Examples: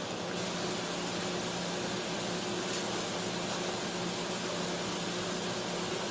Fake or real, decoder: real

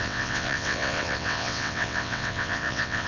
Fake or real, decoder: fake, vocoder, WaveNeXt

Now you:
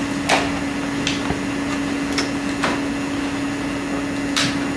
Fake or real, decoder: real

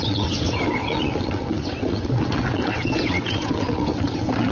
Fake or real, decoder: fake, vocoder, WaveNeXt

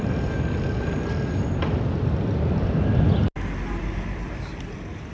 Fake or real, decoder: real